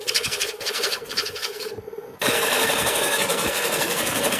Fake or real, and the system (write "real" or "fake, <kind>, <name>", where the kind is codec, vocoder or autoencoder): fake, codec, SNAC